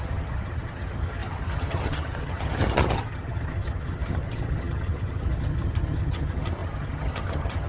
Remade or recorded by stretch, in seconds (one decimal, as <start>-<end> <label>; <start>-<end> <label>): 0.0-7.7 remade